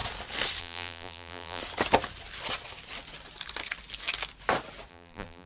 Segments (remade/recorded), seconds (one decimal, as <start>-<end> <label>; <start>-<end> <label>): 0.0-0.6 recorded; 0.6-1.6 remade; 1.6-4.9 recorded; 4.9-5.5 remade